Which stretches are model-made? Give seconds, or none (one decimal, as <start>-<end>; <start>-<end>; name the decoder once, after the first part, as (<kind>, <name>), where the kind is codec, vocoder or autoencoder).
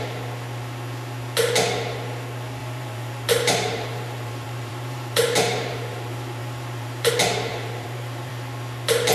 2.6-7.1 (vocoder, BigVGAN v2); 7.5-8.3